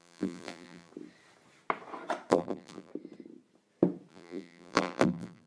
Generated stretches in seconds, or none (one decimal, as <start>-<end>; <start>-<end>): 0.0-0.9; 2.3-2.9; 4.1-5.5